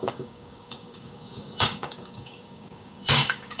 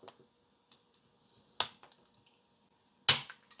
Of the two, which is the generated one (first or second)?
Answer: first